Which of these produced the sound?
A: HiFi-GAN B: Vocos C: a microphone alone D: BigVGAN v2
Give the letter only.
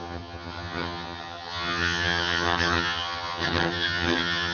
A